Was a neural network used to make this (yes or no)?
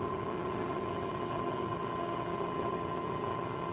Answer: yes